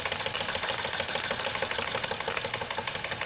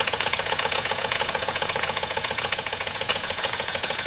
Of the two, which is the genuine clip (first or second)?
first